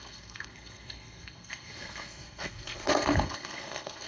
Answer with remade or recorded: remade